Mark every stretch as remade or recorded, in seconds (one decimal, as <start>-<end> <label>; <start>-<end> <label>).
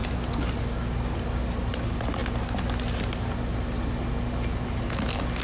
0.0-5.4 recorded